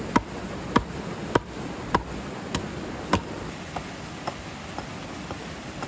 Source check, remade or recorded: recorded